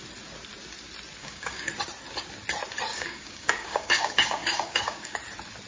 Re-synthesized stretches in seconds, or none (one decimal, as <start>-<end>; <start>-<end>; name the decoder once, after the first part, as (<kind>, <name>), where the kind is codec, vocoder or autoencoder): 1.2-1.7 (codec, DAC); 2.9-5.2